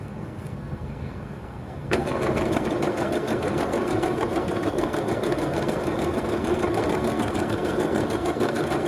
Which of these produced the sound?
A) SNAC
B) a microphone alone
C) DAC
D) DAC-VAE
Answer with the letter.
A